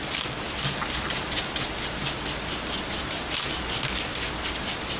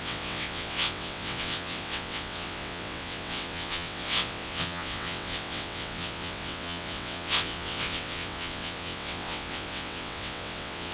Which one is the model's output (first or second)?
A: second